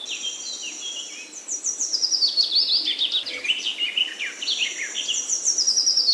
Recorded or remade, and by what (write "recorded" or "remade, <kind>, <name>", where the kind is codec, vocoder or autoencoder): recorded